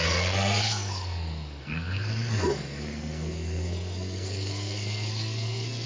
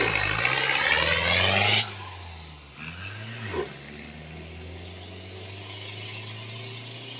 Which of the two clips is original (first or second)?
second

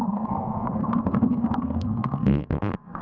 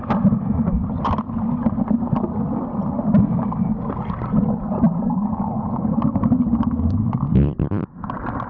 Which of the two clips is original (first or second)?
second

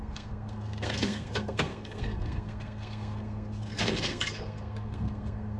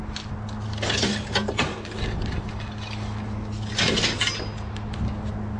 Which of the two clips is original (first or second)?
second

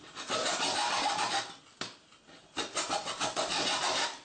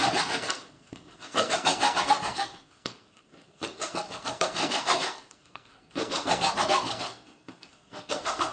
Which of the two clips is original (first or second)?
first